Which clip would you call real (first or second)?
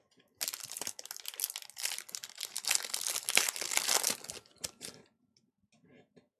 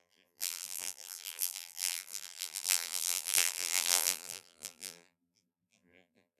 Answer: first